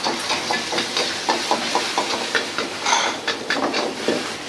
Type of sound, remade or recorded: recorded